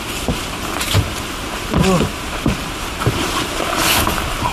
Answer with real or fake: real